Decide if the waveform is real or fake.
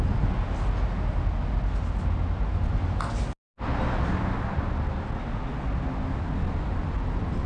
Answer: real